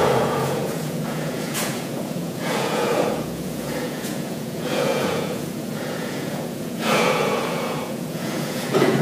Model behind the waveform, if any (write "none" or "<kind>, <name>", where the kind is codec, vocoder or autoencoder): vocoder, Vocos